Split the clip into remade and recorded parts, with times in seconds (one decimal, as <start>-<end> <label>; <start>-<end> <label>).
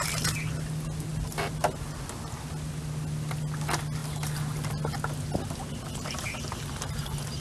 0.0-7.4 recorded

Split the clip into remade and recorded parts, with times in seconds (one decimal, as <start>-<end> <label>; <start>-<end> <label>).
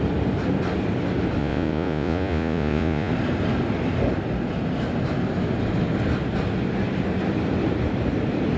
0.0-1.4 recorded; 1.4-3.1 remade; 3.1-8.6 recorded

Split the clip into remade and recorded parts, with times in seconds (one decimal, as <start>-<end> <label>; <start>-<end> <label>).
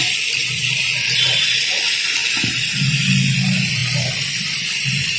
0.0-5.2 recorded